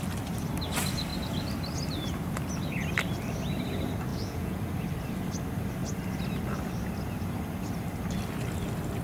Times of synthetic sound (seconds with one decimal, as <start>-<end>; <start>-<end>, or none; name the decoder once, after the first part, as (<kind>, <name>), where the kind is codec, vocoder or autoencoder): 4.1-4.6 (vocoder, Vocos)